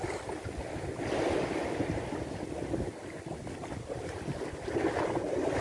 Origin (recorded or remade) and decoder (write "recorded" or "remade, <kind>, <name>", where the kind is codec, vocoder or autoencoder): recorded